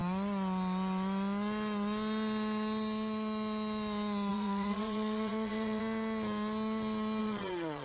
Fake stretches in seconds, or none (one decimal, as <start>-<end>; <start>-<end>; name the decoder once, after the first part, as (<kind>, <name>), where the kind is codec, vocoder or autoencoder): 4.3-5.8 (vocoder, Vocos); 7.2-7.8